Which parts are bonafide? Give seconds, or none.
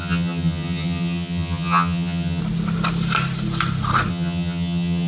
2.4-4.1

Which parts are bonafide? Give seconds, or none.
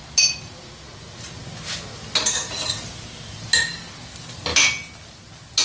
0.0-5.6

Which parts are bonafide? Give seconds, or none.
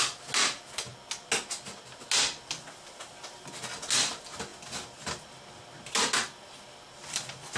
0.0-7.6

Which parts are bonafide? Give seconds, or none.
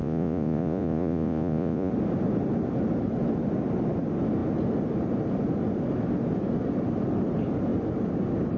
1.9-8.6